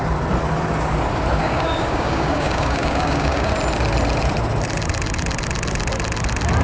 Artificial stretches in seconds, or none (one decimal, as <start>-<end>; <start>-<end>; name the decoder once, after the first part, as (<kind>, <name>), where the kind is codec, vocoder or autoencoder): 1.4-3.5 (codec, DAC)